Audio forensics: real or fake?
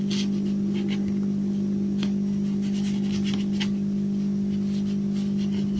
real